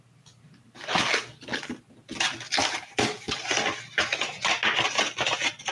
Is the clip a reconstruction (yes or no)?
no